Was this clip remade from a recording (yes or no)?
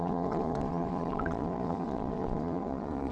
yes